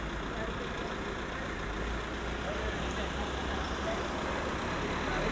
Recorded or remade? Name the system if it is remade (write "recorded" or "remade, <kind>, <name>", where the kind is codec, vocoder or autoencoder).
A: recorded